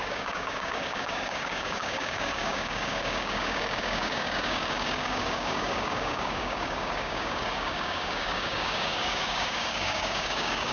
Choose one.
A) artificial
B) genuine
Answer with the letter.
A